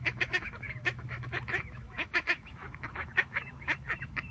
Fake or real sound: fake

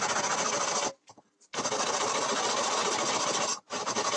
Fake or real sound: real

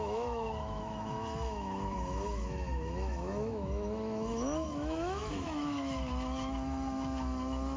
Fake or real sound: fake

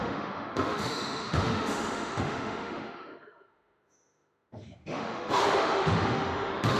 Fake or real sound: fake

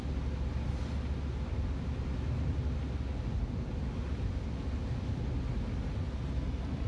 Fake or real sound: real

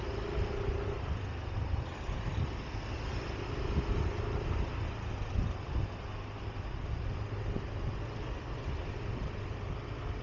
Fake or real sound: real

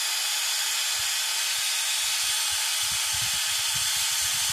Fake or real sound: real